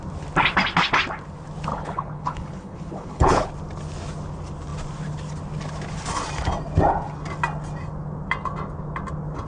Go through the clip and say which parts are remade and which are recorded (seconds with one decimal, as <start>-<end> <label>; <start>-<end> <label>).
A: 0.0-1.7 recorded; 1.7-3.5 remade; 3.5-9.5 recorded